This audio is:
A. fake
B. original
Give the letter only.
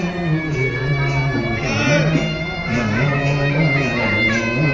B